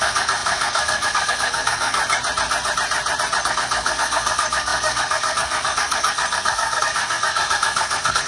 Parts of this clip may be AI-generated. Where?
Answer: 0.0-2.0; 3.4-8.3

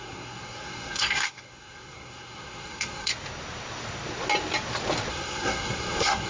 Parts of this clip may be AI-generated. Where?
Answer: 0.0-3.1; 5.1-6.3